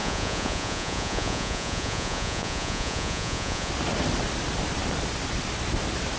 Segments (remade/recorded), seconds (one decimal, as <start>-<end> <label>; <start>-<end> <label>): 0.0-3.7 remade; 3.7-6.2 recorded